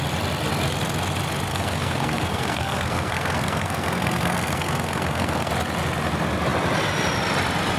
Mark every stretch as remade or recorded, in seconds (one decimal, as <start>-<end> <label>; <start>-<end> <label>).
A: 0.0-1.5 recorded; 1.5-5.5 remade; 5.5-7.8 recorded